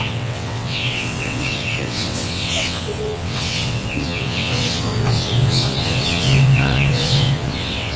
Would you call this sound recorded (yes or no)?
no